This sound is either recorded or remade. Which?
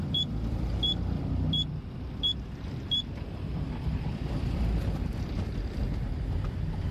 remade